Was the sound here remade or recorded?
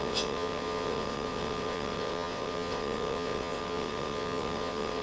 remade